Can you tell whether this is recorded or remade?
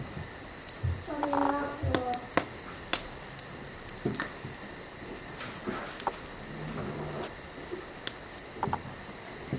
recorded